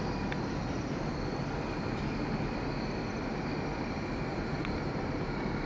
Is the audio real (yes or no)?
yes